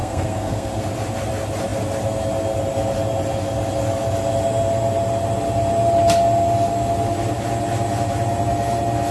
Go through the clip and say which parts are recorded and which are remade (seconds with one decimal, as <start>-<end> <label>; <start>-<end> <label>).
0.0-0.8 remade; 0.8-9.1 recorded